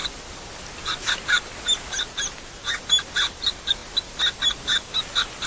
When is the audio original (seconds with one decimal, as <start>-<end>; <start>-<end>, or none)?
0.0-5.5